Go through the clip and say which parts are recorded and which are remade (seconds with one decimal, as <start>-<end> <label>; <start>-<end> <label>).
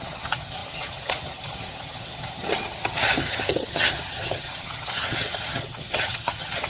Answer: 0.0-6.7 remade